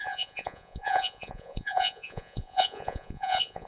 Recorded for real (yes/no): no